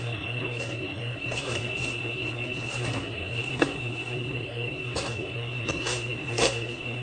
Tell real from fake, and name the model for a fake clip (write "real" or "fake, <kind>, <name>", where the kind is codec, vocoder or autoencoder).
fake, codec, SNAC